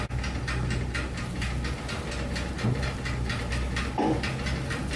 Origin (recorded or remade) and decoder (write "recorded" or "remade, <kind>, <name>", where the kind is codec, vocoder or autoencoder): recorded